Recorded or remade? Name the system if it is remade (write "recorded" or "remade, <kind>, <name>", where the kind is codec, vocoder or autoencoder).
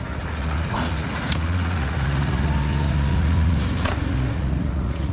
remade, vocoder, Vocos